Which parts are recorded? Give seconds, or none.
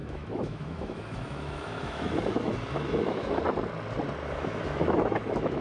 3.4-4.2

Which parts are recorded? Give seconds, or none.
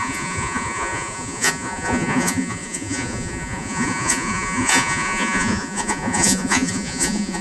none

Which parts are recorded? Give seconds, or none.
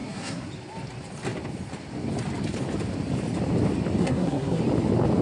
0.5-4.0; 4.6-5.2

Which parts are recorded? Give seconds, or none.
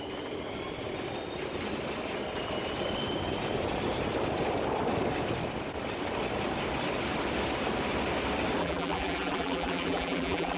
0.0-8.6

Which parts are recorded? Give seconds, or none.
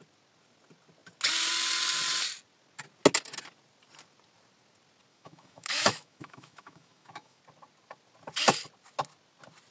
0.0-5.1; 7.4-9.7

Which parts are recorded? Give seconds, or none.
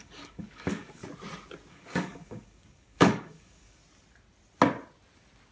1.0-1.7; 3.8-5.5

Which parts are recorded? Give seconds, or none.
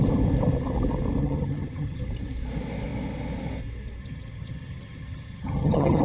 0.0-1.2; 2.0-4.0